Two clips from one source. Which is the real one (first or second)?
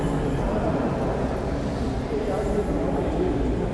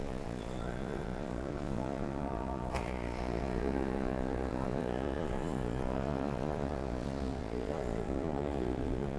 first